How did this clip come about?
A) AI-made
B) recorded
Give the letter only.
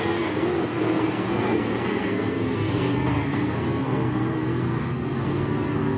A